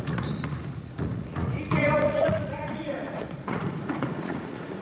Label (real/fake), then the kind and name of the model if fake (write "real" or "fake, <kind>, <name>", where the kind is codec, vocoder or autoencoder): fake, vocoder, Vocos